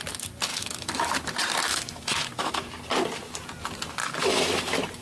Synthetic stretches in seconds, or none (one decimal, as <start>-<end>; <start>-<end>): 0.5-1.1; 1.7-2.8; 4.0-4.6